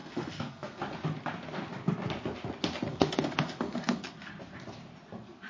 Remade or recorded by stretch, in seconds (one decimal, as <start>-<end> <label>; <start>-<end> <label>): 0.0-0.8 remade; 0.8-2.9 recorded; 2.9-4.3 remade; 4.3-5.5 recorded